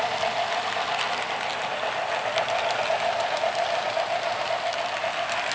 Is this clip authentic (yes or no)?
yes